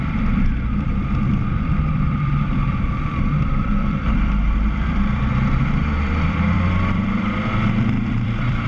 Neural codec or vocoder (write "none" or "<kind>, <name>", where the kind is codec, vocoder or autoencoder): vocoder, BigVGAN v2